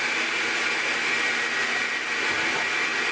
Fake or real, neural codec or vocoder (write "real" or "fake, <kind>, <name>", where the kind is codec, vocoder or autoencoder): real